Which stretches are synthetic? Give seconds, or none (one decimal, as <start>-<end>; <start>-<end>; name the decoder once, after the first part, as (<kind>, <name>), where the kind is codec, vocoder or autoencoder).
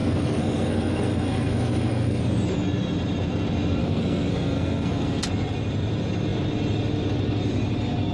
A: 0.0-2.2 (codec, SNAC); 3.8-5.2